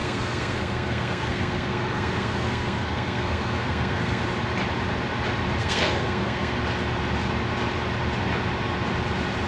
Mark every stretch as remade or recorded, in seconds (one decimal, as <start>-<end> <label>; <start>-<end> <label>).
0.0-4.2 remade; 4.2-5.6 recorded; 5.6-6.6 remade; 6.6-9.5 recorded